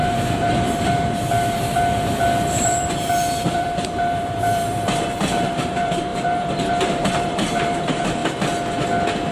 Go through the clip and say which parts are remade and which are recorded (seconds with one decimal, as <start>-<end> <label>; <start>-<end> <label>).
0.0-8.2 remade; 8.2-9.3 recorded